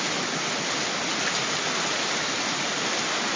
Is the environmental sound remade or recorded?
recorded